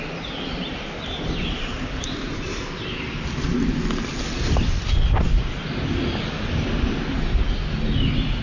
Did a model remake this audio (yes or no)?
no